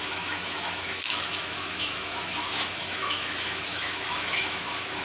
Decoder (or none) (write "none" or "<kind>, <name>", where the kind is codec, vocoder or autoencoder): autoencoder, DAC-VAE